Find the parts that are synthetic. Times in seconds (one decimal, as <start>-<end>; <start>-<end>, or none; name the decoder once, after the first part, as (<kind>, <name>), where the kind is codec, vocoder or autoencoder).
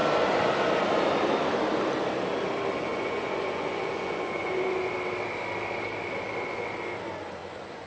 2.9-4.9 (vocoder, Vocos); 7.4-7.9